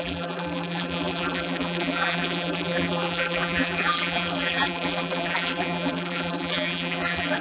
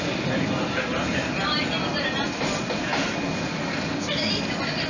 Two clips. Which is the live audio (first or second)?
second